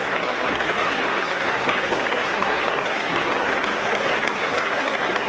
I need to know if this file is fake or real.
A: fake